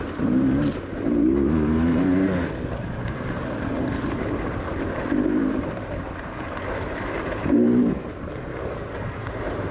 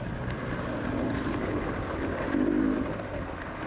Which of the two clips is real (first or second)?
second